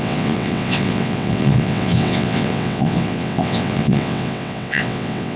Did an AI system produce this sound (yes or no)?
yes